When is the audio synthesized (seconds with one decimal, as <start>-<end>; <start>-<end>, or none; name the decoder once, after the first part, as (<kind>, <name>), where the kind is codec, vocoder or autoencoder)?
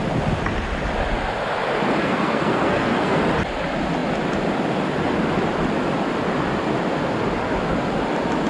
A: 2.0-3.2 (codec, SNAC)